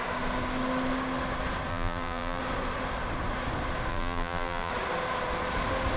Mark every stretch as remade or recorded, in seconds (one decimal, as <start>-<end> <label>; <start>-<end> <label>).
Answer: 0.0-1.7 recorded; 1.7-2.4 remade; 2.4-3.9 recorded; 3.9-4.7 remade; 4.7-6.0 recorded